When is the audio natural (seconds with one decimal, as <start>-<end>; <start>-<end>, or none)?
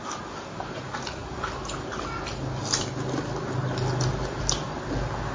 0.0-5.3